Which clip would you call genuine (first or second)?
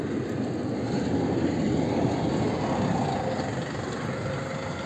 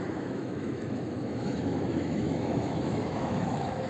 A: first